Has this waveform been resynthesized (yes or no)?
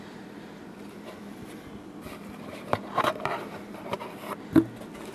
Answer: no